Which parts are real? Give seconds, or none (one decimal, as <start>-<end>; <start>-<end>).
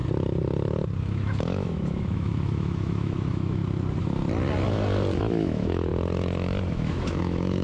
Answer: 0.0-1.0; 3.6-5.2; 5.9-6.7